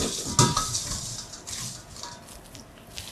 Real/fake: real